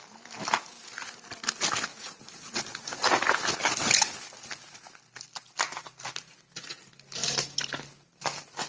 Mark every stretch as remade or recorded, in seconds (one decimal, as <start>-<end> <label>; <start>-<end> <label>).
0.0-1.9 recorded; 1.9-2.6 remade; 2.6-8.7 recorded